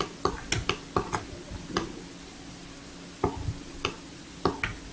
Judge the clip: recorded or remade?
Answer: recorded